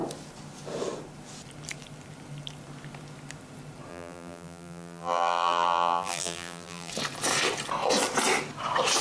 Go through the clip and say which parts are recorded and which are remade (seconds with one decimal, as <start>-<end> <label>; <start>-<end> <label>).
0.0-3.9 recorded; 3.9-6.9 remade; 6.9-9.0 recorded